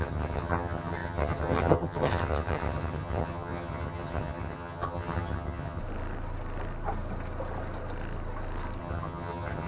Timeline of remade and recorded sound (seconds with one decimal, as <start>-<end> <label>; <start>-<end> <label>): 0.0-5.8 remade; 5.8-8.8 recorded; 8.8-9.7 remade